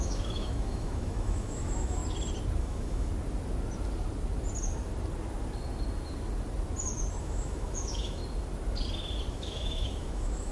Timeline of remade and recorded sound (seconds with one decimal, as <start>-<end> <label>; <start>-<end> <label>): 0.0-2.0 remade; 2.0-2.6 recorded; 2.6-3.1 remade; 3.1-7.2 recorded; 7.2-8.2 remade; 8.2-9.3 recorded; 9.3-10.5 remade